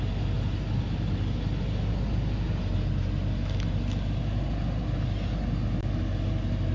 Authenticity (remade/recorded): recorded